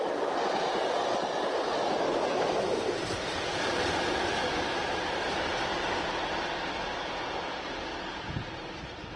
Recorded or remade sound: recorded